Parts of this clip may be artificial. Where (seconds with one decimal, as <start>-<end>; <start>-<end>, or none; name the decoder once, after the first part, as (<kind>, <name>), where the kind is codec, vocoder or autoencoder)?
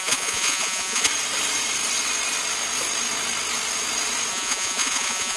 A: 0.0-1.1 (vocoder, Vocos); 4.3-5.4